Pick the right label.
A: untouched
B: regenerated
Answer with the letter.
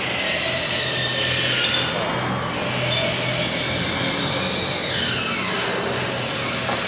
A